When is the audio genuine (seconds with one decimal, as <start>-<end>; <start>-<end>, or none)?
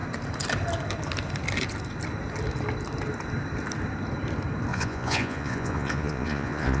0.0-4.7